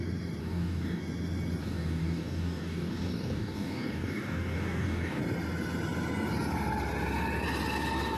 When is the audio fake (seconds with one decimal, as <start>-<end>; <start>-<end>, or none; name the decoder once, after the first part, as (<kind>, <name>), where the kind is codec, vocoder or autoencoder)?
0.4-1.0 (codec, DAC); 1.6-5.2

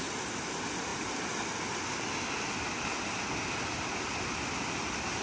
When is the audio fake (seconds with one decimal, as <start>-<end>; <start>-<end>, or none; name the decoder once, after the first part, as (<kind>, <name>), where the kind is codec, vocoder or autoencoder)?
none

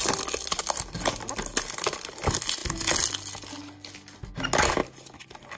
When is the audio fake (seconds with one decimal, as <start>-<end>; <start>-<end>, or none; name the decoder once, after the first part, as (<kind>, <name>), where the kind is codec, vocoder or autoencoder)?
none

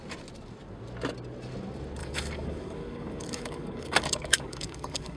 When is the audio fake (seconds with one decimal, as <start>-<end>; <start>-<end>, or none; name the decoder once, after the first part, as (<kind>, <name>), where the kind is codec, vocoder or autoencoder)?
2.0-5.2 (codec, DAC)

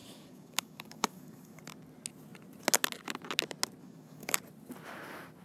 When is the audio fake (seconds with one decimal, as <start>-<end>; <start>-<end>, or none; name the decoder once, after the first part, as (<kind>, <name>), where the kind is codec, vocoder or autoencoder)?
0.0-1.6 (codec, DAC); 3.8-4.4

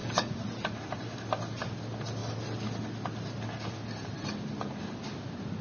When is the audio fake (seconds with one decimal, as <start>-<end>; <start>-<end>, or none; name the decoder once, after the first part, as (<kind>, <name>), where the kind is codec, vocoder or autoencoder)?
none